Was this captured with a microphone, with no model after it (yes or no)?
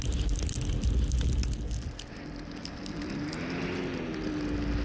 yes